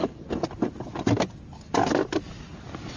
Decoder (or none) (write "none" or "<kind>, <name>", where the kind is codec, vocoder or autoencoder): none